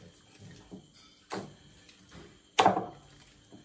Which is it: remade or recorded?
recorded